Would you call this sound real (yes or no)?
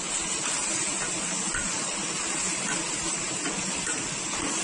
yes